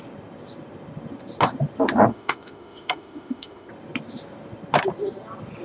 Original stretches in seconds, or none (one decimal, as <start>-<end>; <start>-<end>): 0.0-2.1; 3.7-5.6